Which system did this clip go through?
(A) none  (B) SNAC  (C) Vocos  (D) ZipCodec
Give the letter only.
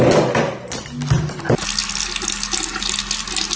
A